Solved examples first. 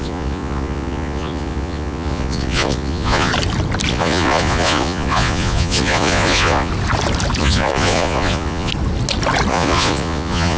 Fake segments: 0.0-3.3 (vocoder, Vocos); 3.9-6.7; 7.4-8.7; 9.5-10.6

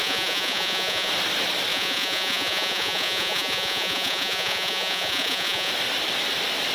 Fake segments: 0.0-1.1 (vocoder, Vocos); 1.7-5.7

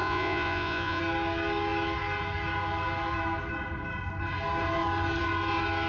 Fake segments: 0.0-1.0 (vocoder, Vocos)

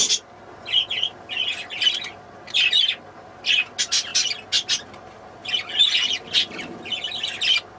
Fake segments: none

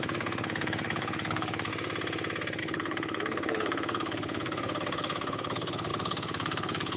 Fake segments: 0.0-1.7 (codec, HILCodec); 2.6-7.0

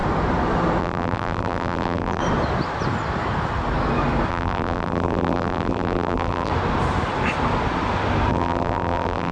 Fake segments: 0.8-2.2 (vocoder, BigVGAN v2); 4.3-6.5; 8.3-9.3

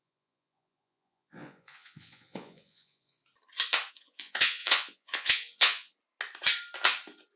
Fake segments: 0.0-3.2 (vocoder, Vocos); 3.9-5.9